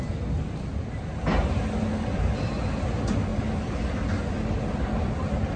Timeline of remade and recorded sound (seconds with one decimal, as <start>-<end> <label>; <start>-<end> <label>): 0.0-5.6 recorded

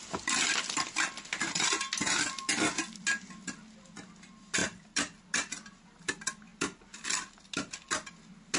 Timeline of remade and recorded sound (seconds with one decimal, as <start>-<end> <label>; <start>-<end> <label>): 0.0-8.6 recorded